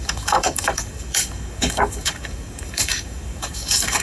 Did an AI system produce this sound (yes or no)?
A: yes